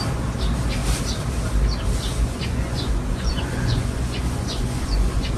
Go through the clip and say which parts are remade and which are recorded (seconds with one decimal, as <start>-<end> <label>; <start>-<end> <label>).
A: 0.0-2.1 recorded; 2.1-5.4 remade